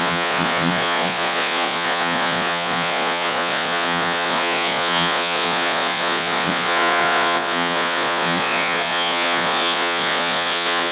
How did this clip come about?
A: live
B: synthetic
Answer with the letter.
B